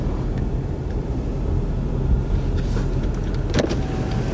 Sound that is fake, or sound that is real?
real